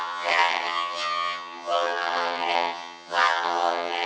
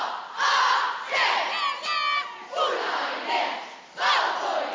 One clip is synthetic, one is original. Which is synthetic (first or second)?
first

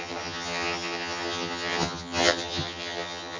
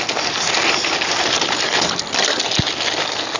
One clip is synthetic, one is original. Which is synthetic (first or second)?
first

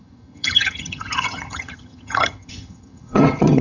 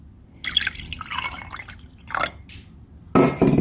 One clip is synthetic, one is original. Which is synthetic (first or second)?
first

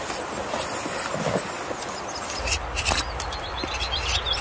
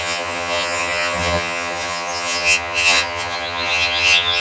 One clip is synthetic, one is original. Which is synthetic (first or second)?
second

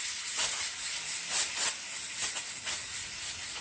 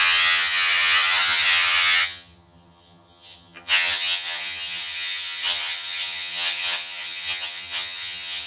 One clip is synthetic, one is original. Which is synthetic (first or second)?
second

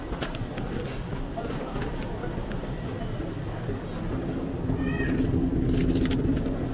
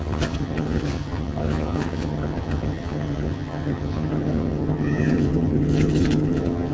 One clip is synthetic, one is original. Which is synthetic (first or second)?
second